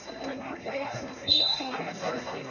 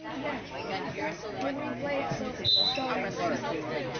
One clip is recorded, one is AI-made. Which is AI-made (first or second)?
first